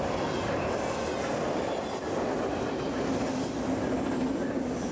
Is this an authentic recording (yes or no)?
yes